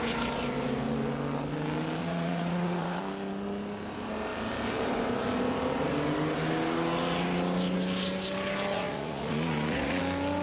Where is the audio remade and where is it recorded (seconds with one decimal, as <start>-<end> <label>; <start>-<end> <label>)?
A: 0.0-2.0 recorded; 2.0-3.0 remade; 3.0-8.7 recorded; 8.7-10.0 remade; 10.0-10.4 recorded